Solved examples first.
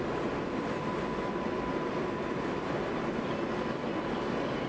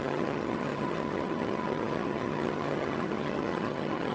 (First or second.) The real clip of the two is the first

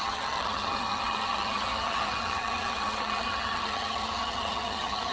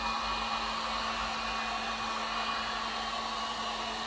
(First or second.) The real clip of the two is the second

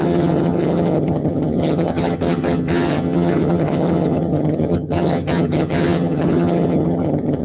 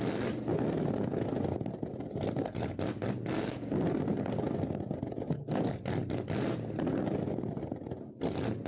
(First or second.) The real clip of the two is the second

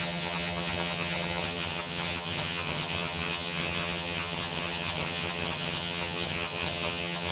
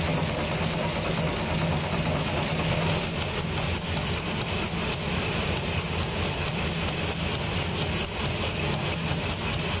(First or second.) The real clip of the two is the second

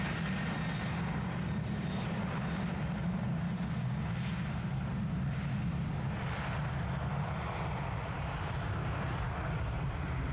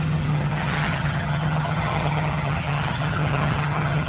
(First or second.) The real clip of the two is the first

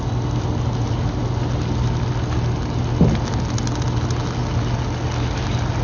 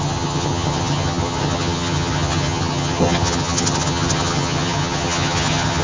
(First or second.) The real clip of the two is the first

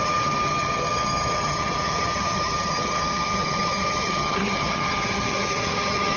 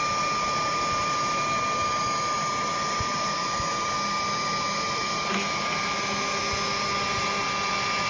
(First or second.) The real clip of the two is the second